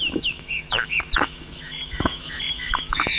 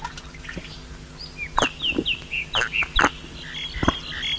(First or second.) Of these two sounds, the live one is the second